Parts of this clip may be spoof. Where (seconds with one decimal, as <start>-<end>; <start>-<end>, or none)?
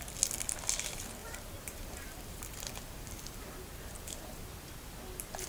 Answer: 1.2-4.5